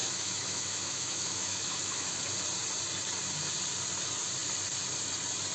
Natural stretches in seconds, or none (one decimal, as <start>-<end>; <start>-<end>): 2.2-5.5